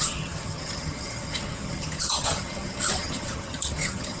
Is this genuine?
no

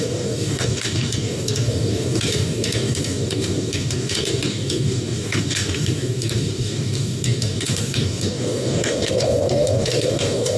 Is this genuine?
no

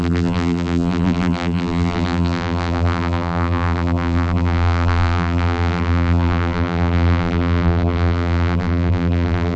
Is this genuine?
no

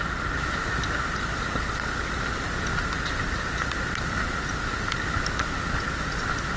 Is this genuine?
yes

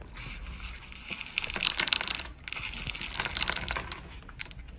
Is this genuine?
yes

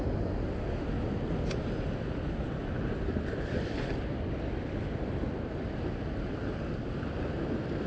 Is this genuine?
yes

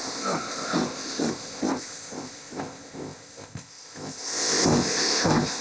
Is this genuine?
no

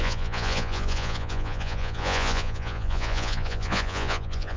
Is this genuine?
no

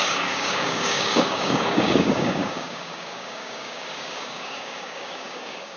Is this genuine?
no